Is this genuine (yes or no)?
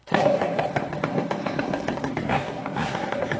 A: no